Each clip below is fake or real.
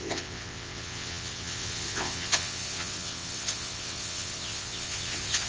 fake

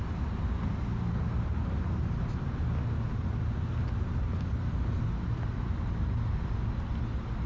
real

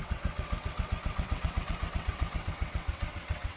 fake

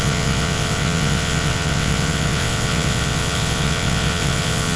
fake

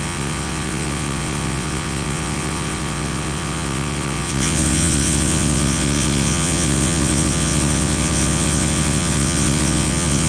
fake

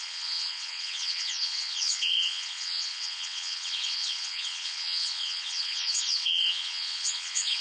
fake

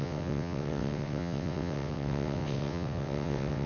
fake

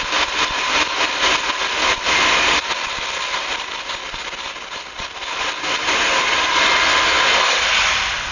real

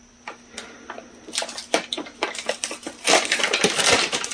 real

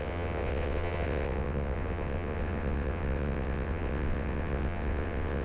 fake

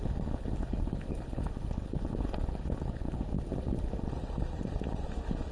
real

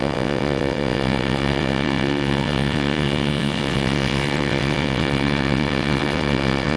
fake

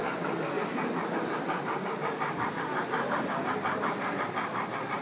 real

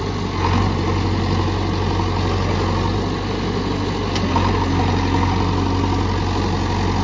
real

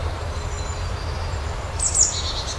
real